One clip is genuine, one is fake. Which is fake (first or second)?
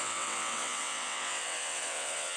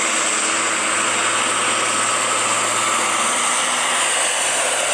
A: first